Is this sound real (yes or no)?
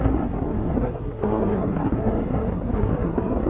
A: no